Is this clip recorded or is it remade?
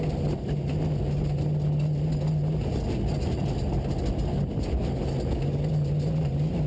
recorded